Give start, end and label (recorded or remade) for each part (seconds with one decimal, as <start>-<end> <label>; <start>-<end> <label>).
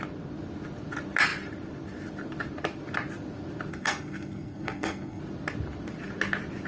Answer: 0.0-3.7 recorded; 3.7-5.2 remade; 5.2-6.7 recorded